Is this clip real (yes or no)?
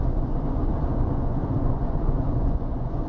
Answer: no